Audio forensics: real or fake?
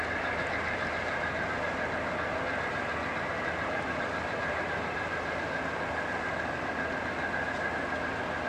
real